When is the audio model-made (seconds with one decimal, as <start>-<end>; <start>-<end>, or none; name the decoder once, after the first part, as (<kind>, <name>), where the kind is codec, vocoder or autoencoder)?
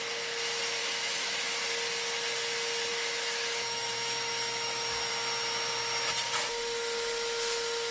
0.8-1.6 (autoencoder, DAC-VAE); 2.9-5.1